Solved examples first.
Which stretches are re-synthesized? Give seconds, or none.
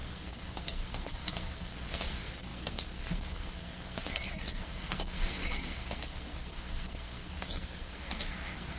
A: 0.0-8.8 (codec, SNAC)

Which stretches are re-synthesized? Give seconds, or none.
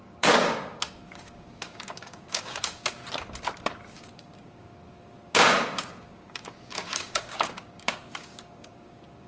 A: 0.0-3.0 (codec, DAC); 3.9-9.3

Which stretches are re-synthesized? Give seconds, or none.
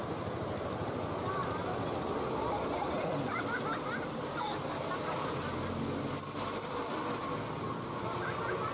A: none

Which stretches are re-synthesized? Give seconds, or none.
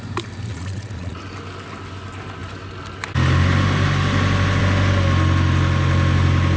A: 0.5-1.2 (vocoder, Vocos)